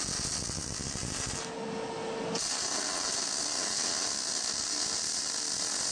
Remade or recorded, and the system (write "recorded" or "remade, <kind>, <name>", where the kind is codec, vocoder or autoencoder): recorded